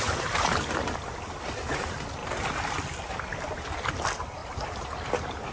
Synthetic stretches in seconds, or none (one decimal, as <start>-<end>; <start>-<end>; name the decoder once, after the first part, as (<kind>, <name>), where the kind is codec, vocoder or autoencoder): none